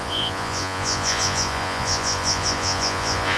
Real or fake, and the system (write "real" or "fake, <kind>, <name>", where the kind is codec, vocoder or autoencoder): fake, vocoder, Vocos